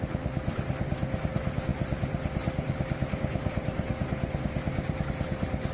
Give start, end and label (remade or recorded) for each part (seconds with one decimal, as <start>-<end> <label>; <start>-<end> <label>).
0.0-5.7 recorded